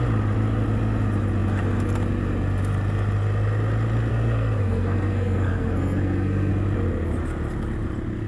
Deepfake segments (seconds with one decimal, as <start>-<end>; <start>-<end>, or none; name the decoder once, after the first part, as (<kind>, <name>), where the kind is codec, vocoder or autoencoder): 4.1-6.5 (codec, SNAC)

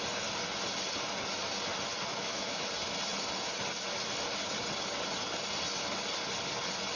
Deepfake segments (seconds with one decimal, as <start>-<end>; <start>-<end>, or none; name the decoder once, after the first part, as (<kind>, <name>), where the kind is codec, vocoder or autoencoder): 2.1-2.7 (autoencoder, DAC-VAE)

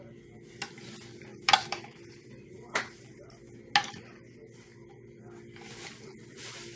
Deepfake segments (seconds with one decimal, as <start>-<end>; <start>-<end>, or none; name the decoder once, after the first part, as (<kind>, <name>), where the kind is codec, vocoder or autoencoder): 1.3-3.4 (vocoder, BigVGAN v2)

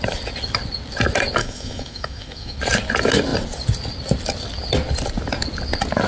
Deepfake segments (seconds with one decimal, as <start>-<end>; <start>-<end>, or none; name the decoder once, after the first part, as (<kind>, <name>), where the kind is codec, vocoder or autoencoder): 1.4-2.6 (autoencoder, DAC-VAE)

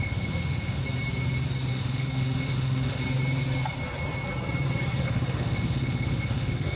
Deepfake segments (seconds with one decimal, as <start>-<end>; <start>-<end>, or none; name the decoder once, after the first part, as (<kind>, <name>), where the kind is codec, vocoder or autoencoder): 0.0-0.8 (autoencoder, DAC-VAE); 1.7-3.0; 5.0-6.8

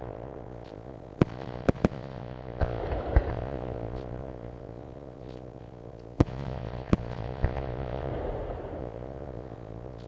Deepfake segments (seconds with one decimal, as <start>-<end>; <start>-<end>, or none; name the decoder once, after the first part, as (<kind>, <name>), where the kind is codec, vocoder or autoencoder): 0.0-2.8 (vocoder, Vocos); 3.3-8.1; 8.8-10.1